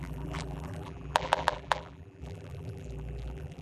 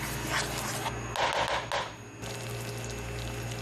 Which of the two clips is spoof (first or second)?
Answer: first